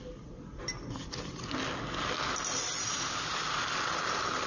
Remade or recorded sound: recorded